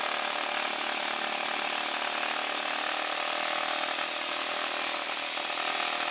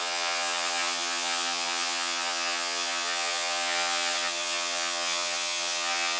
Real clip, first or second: first